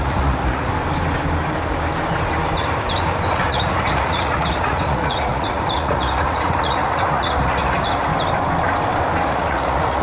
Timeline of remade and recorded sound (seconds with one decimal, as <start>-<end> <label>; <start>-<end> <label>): 0.0-0.7 remade; 0.7-3.3 recorded; 3.3-8.1 remade; 8.1-9.3 recorded; 9.3-10.0 remade